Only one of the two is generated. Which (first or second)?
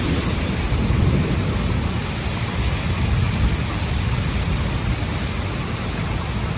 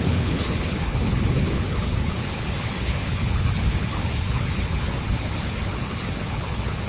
second